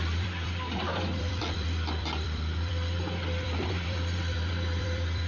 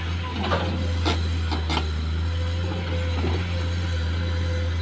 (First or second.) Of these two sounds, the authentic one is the second